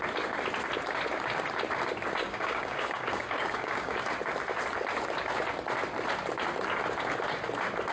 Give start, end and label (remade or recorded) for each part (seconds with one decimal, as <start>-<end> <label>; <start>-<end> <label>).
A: 0.0-2.2 recorded; 2.2-4.0 remade; 4.0-7.9 recorded